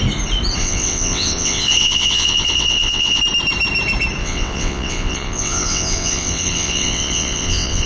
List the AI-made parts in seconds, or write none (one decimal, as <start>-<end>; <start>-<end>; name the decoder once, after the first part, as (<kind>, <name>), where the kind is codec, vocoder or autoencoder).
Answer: 0.6-3.2 (vocoder, WaveNeXt); 4.2-7.9